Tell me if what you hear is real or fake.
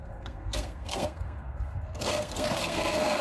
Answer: fake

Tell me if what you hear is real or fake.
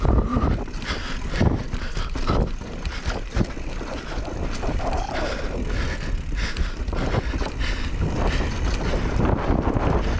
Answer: real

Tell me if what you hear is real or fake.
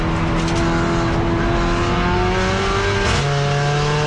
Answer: real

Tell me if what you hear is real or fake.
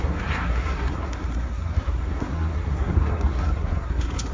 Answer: fake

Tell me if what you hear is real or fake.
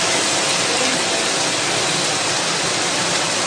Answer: real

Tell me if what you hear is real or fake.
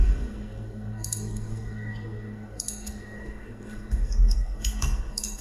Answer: fake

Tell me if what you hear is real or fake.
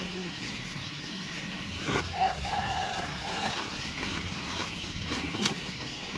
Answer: fake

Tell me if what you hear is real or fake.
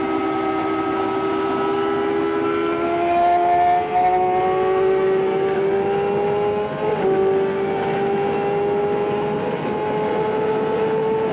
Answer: real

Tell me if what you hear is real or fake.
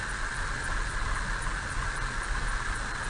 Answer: real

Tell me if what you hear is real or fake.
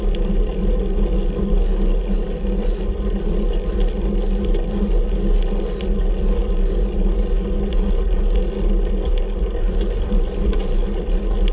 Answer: real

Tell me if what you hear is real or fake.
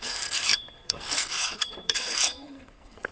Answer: fake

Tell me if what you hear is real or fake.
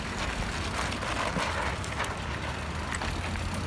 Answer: real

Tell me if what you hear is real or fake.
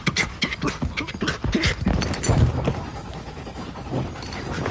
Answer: real